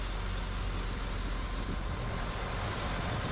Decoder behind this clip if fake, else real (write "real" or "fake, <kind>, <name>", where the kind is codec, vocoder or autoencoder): real